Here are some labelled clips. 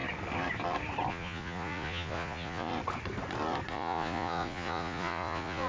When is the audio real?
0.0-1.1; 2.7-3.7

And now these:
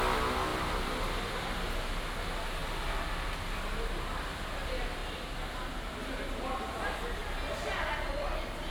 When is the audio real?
0.0-0.5; 1.3-8.7

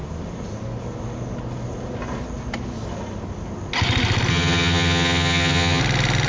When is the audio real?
0.0-4.3; 5.8-6.3

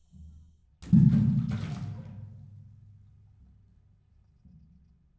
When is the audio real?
0.0-5.2

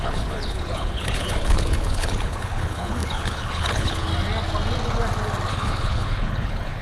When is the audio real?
4.1-5.5

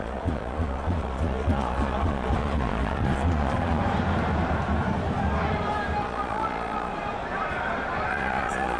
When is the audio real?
3.8-6.0; 6.9-8.1

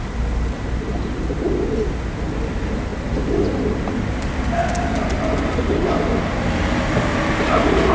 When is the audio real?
0.0-7.9